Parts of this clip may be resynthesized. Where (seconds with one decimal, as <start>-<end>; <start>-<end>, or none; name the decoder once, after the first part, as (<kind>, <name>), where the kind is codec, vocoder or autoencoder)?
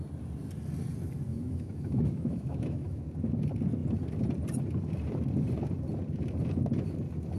1.3-3.0 (autoencoder, DAC-VAE)